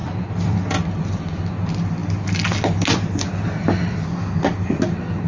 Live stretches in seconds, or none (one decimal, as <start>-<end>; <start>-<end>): 1.4-5.3